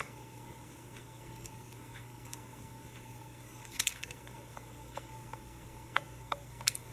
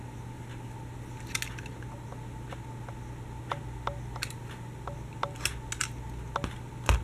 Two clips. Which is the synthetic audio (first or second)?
first